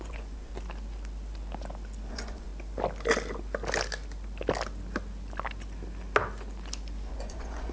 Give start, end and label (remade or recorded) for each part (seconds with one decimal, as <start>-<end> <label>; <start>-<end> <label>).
0.0-0.5 remade; 0.5-2.1 recorded; 2.1-2.5 remade; 2.5-7.1 recorded; 7.1-7.7 remade